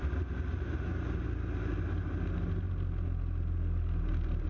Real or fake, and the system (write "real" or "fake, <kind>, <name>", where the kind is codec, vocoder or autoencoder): real